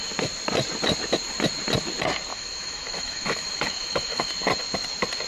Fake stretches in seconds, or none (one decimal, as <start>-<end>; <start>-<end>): 2.3-4.3